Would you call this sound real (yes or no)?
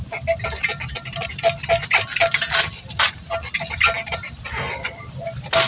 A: yes